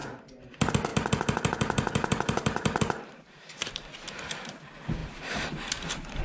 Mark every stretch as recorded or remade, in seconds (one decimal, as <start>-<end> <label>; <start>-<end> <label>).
0.0-0.9 recorded; 0.9-4.6 remade; 4.6-5.0 recorded; 5.0-6.2 remade